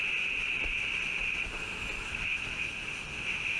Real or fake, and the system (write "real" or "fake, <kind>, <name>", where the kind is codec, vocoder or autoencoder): real